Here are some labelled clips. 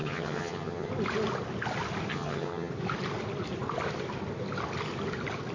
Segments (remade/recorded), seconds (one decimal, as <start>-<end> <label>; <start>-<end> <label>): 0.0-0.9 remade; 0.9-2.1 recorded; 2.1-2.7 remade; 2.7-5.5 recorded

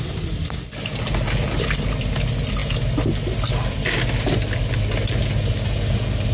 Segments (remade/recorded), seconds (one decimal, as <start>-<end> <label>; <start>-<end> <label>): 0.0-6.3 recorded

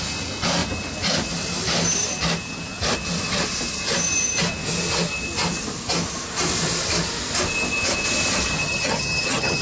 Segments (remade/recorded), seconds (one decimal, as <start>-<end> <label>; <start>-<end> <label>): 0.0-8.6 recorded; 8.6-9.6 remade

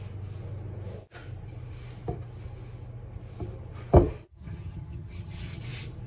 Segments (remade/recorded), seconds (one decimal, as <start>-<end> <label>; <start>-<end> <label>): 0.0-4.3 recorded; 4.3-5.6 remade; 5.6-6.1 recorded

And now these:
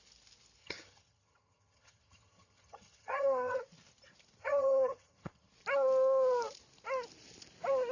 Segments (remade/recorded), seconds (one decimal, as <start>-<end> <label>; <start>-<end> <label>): 0.0-0.6 recorded; 0.6-3.6 remade; 3.6-4.4 recorded; 4.4-5.5 remade; 5.5-7.9 recorded

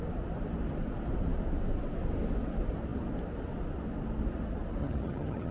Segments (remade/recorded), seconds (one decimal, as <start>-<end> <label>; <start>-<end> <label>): 0.0-4.8 recorded; 4.8-5.5 remade